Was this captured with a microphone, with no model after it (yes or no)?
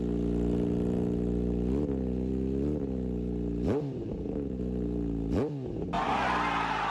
yes